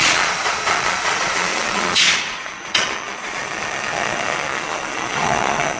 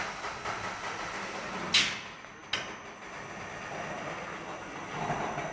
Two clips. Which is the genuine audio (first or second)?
second